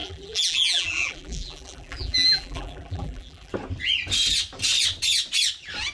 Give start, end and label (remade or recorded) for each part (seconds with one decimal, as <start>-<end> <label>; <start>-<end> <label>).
0.0-3.5 remade; 3.5-5.9 recorded